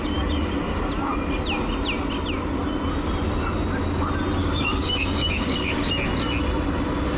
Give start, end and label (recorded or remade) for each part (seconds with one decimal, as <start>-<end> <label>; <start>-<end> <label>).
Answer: 0.0-4.4 recorded; 4.4-6.0 remade; 6.0-7.2 recorded